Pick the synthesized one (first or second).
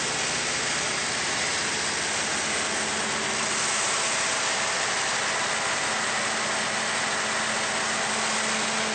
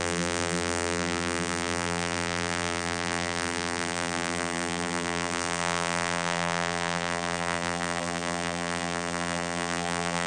second